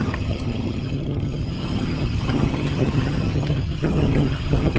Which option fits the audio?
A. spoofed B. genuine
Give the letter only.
A